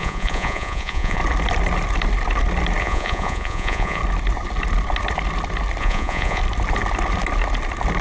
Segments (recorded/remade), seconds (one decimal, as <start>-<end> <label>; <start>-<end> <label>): 0.0-1.2 remade; 1.2-2.8 recorded; 2.8-4.0 remade; 4.0-5.8 recorded; 5.8-6.4 remade; 6.4-8.0 recorded